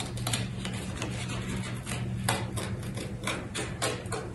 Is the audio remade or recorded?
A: recorded